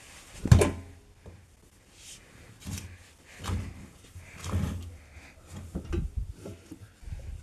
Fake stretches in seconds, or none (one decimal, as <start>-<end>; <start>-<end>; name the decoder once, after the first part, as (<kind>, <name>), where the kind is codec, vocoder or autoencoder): none